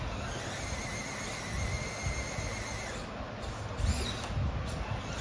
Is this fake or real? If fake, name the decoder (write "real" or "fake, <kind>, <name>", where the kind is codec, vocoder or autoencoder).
real